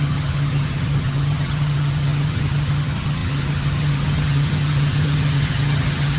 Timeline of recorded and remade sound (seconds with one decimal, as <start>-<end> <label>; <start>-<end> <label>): 0.0-6.2 remade

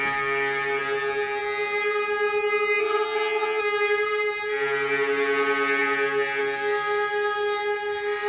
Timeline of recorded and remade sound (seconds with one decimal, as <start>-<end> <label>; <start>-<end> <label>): 0.0-2.8 recorded; 2.8-3.6 remade; 3.6-8.3 recorded

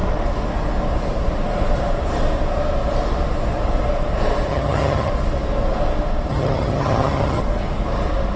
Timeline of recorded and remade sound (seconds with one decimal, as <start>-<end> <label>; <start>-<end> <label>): 0.0-4.5 recorded; 4.5-5.1 remade; 5.1-6.3 recorded; 6.3-7.4 remade; 7.4-8.4 recorded

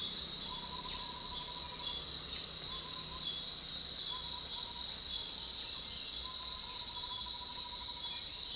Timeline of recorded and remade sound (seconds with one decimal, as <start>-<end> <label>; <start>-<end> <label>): 0.0-8.6 recorded

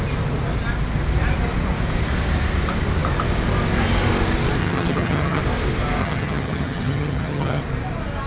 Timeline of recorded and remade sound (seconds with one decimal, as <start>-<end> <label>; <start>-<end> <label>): 0.0-4.6 recorded; 4.6-5.4 remade; 5.4-6.0 recorded; 6.0-7.6 remade; 7.6-8.3 recorded

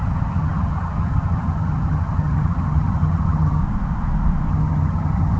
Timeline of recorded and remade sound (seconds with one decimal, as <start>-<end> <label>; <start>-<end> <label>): 0.0-3.6 remade; 3.6-4.5 recorded; 4.5-5.4 remade